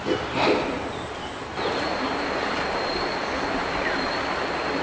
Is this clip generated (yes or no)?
no